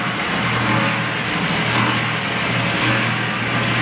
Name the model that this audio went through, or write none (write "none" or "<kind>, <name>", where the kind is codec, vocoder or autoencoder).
none